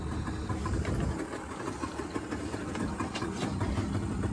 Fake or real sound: real